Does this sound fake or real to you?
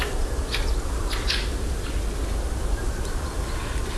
real